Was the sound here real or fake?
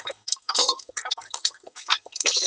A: fake